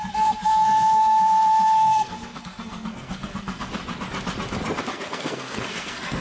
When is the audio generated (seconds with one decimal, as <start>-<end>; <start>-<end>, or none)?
0.0-3.8; 4.8-6.2